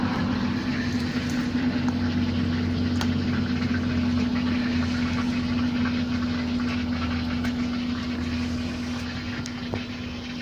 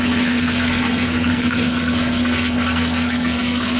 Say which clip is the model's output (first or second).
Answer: second